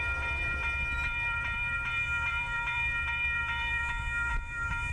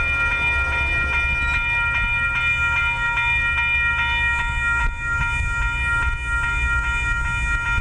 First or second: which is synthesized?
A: first